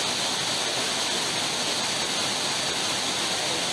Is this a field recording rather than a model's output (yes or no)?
yes